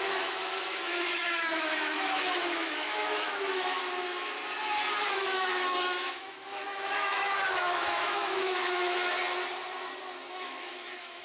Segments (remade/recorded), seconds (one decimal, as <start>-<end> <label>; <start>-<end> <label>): 0.0-4.4 remade; 4.4-5.1 recorded; 5.1-9.2 remade; 9.2-10.3 recorded; 10.3-11.2 remade